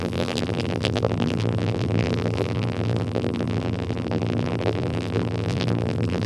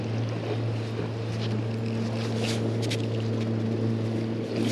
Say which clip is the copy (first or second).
first